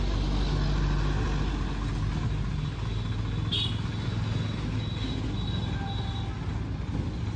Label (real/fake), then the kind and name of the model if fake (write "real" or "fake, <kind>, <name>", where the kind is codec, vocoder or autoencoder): real